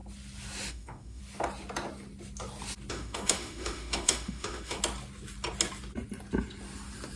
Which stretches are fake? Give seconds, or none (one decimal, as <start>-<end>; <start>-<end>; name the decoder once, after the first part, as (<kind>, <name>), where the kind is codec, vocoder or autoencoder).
0.7-1.2 (autoencoder, DAC-VAE); 2.9-4.8